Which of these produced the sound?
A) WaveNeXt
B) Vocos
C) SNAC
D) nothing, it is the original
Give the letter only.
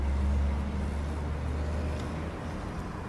D